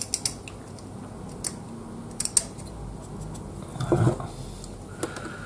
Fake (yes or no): no